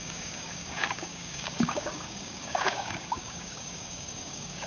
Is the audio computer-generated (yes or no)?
yes